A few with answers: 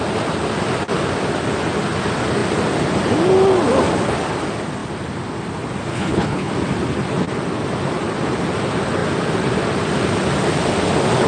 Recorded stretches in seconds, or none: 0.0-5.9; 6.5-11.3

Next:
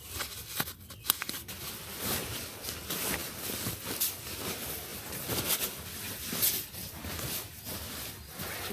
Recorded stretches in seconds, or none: 0.0-3.2; 4.1-8.7